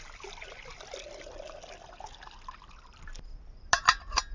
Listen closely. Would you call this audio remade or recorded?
recorded